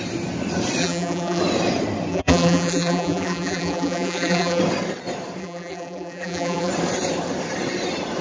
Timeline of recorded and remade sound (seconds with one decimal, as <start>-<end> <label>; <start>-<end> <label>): 0.0-0.8 recorded; 0.8-1.4 remade; 1.4-2.1 recorded; 2.1-4.6 remade; 4.6-5.4 recorded; 5.4-6.7 remade; 6.7-8.2 recorded